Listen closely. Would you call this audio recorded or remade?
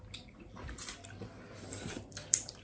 remade